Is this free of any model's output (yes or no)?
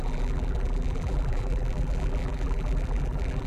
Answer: no